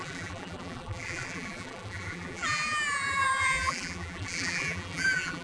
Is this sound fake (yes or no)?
yes